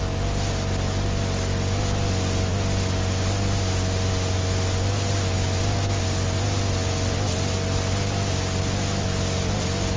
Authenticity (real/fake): real